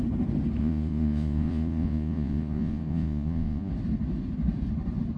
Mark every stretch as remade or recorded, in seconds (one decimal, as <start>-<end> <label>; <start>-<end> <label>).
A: 0.0-0.6 recorded; 0.6-3.7 remade; 3.7-5.2 recorded